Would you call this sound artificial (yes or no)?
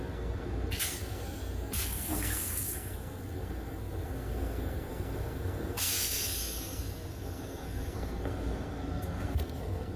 yes